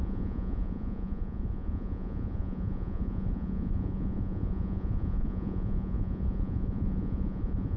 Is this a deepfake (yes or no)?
yes